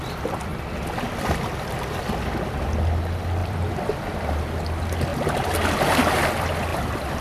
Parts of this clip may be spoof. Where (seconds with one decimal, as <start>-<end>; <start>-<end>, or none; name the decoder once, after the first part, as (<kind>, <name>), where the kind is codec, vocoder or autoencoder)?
0.5-2.5 (vocoder, BigVGAN v2); 3.4-4.4; 6.7-7.2